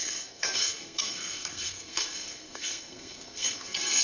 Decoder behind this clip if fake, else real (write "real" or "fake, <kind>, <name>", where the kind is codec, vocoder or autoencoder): fake, codec, SNAC